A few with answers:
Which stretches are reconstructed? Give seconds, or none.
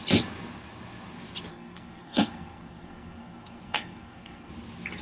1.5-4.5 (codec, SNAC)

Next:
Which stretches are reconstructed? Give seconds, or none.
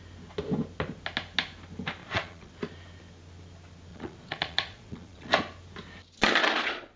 2.0-2.5 (vocoder, Vocos); 3.9-5.3; 6.4-7.0